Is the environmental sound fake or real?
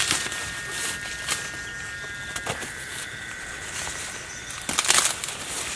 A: real